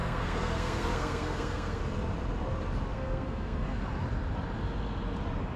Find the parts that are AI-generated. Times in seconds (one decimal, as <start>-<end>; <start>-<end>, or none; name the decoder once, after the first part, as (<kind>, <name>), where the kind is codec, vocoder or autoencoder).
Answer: 0.0-1.8 (codec, SNAC); 2.9-3.8